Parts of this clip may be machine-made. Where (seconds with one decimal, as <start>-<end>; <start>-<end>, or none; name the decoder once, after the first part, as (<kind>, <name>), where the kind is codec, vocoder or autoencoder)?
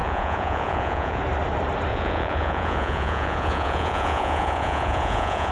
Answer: 0.0-1.2 (vocoder, Vocos); 1.9-5.5